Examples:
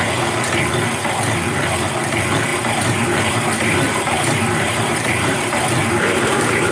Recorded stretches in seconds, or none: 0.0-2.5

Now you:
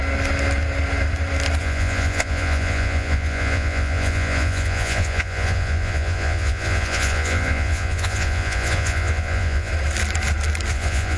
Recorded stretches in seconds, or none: 0.0-1.6; 9.7-10.7

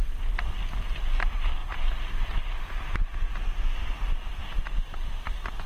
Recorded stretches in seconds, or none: 0.0-5.7

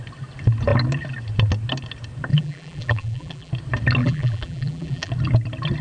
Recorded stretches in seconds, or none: 0.0-2.3; 3.5-4.0; 5.1-5.8

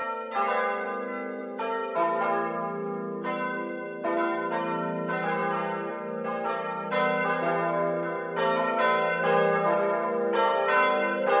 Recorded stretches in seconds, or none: 0.0-11.4

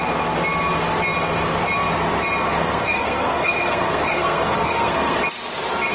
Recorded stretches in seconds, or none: 0.0-2.5; 5.2-5.9

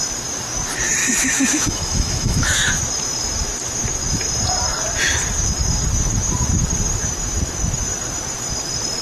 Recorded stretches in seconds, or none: 0.0-1.0; 2.7-9.0